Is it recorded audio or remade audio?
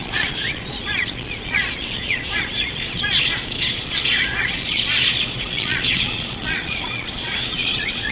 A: remade